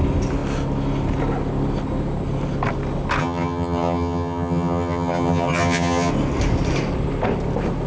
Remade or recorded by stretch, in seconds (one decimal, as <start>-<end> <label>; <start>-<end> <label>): 0.0-3.2 recorded; 3.2-6.1 remade; 6.1-7.9 recorded